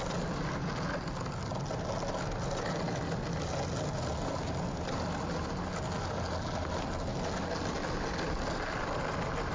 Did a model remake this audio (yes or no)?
no